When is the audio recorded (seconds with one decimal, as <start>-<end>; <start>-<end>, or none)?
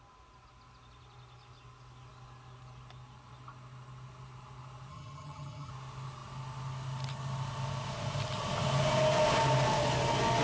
0.0-4.9; 5.7-10.4